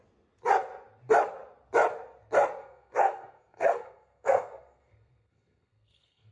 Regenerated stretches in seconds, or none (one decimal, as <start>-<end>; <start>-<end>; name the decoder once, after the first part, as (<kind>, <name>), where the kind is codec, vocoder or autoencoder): 2.6-6.3 (codec, SNAC)